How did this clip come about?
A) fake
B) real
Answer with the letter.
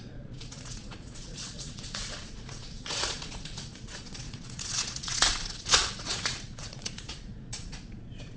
A